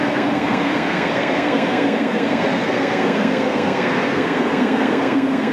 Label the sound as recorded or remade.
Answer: remade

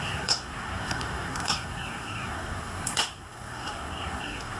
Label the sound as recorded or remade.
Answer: remade